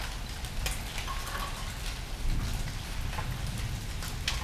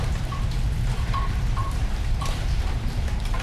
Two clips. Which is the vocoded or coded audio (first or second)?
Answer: second